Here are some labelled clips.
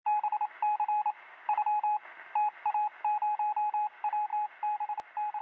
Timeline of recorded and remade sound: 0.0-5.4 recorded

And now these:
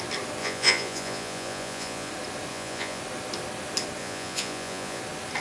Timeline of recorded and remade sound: 0.0-0.4 recorded; 0.4-2.1 remade; 2.1-2.5 recorded; 2.5-3.0 remade; 3.0-4.0 recorded; 4.0-5.0 remade; 5.0-5.4 recorded

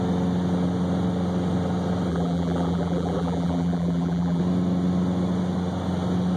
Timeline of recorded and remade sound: 0.0-2.1 recorded; 2.1-4.4 remade; 4.4-6.4 recorded

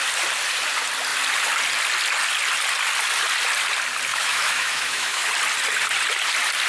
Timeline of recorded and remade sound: 0.0-4.1 recorded; 4.1-5.3 remade; 5.3-6.7 recorded

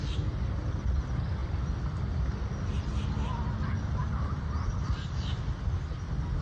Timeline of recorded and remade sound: 0.0-1.4 recorded; 1.4-2.0 remade; 2.0-6.4 recorded

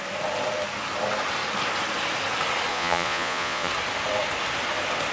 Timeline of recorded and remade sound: 0.0-2.7 recorded; 2.7-3.7 remade; 3.7-5.1 recorded

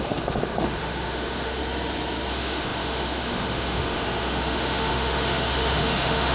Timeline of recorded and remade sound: 0.0-1.6 remade; 1.6-2.3 recorded; 2.3-6.3 remade

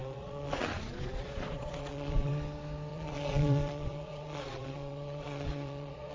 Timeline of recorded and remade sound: 0.0-2.3 remade; 2.3-2.9 recorded; 2.9-6.1 remade